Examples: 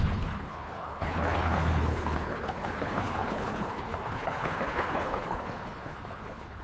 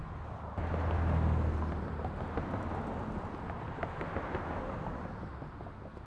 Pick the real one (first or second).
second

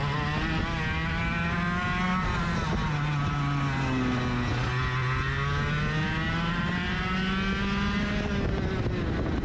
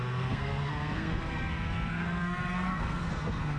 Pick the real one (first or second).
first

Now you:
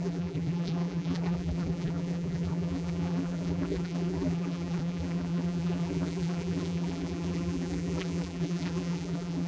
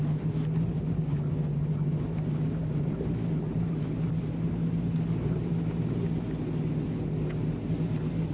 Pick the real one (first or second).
second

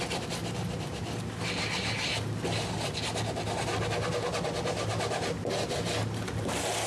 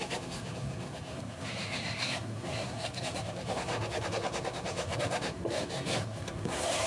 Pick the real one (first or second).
first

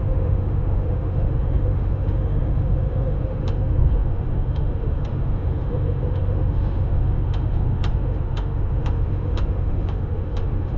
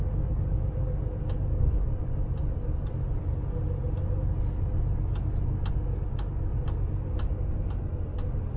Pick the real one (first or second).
second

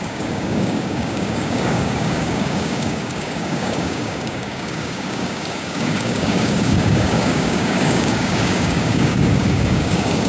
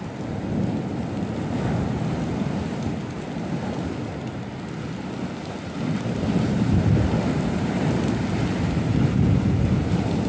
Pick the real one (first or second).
second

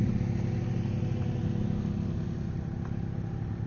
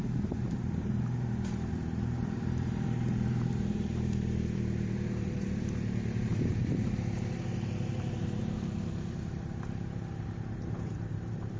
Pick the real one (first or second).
first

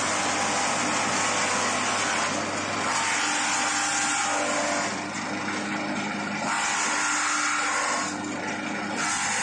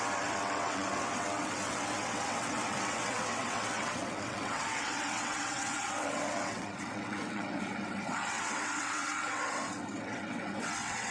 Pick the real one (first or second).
first